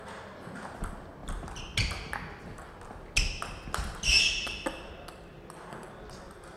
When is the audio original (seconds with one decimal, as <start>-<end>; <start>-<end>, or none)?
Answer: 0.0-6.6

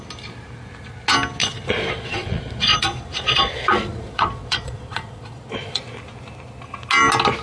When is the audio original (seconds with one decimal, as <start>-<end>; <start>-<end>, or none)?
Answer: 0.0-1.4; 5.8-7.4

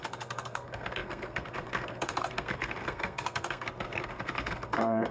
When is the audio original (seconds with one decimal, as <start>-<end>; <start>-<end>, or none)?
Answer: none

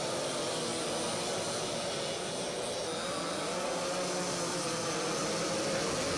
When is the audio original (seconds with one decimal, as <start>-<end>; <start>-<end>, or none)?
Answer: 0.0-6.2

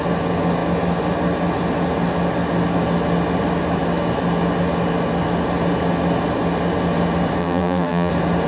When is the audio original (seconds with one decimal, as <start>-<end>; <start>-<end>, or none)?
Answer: 0.0-7.4; 8.1-8.5

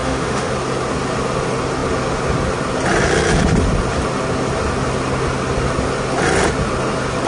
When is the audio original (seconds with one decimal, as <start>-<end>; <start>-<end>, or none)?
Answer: 0.5-7.3